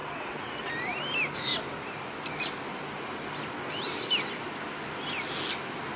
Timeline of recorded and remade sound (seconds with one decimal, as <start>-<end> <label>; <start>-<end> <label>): 0.0-0.7 remade; 0.7-6.0 recorded